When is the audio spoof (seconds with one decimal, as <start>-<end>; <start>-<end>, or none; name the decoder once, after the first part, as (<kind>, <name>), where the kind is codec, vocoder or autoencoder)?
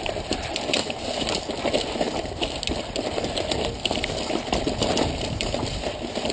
none